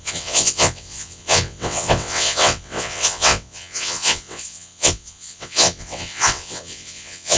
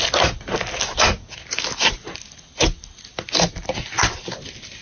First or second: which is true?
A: second